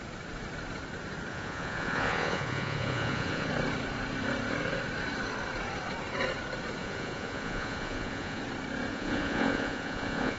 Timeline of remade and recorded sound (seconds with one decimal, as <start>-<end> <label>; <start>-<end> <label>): 0.0-1.3 recorded; 1.3-3.5 remade; 3.5-6.8 recorded; 6.8-8.4 remade; 8.4-8.9 recorded; 8.9-10.4 remade